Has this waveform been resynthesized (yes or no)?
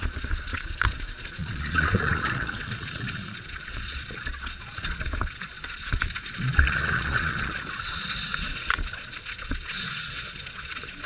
yes